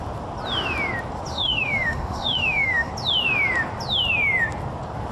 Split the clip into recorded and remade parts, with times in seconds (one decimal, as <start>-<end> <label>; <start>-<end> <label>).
0.0-1.3 recorded; 1.3-2.9 remade; 2.9-5.1 recorded